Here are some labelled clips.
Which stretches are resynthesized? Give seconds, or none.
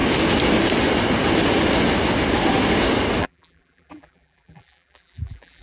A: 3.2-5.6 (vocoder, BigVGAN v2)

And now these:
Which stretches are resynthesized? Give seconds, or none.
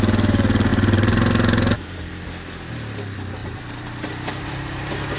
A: 0.7-2.1 (vocoder, BigVGAN v2); 3.4-5.2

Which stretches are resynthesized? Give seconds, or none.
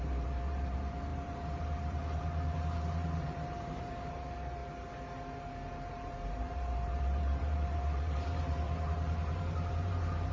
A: 0.0-4.6 (vocoder, BigVGAN v2); 5.9-10.3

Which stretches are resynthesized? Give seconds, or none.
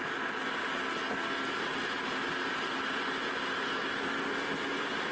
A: none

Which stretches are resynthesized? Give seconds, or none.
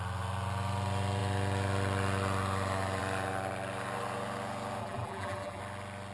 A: 4.8-5.6 (vocoder, BigVGAN v2)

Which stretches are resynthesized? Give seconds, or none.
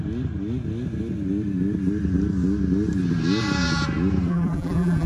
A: 4.3-5.1 (vocoder, BigVGAN v2)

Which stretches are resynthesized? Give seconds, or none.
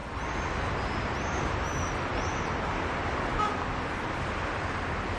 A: 2.1-3.3 (vocoder, BigVGAN v2)